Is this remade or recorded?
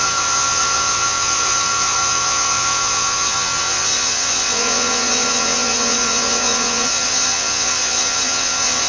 remade